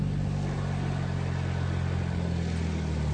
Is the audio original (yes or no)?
yes